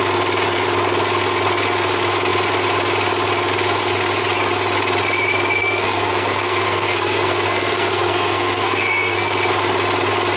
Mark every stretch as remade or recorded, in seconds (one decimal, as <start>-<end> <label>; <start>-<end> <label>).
0.0-5.6 recorded; 5.6-9.3 remade; 9.3-10.4 recorded